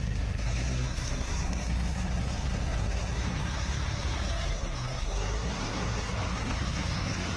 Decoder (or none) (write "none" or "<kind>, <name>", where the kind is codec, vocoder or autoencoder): codec, SNAC